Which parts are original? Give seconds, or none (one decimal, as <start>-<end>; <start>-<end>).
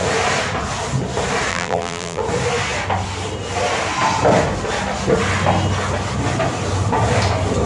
0.0-1.5; 2.2-7.7